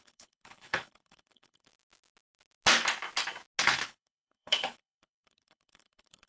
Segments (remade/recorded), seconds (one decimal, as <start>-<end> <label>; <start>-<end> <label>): 0.0-1.7 remade; 1.7-3.6 recorded; 3.6-6.3 remade